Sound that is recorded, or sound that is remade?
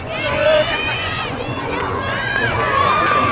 remade